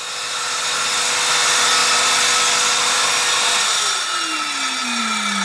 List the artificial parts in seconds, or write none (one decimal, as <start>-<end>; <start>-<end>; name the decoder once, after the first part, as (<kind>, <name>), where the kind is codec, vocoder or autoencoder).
none